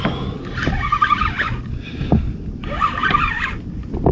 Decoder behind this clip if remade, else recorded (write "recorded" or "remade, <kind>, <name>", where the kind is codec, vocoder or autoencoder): recorded